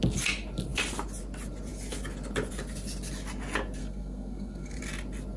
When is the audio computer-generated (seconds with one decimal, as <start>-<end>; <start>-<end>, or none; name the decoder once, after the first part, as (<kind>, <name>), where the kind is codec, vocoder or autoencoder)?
3.8-4.8 (codec, SNAC)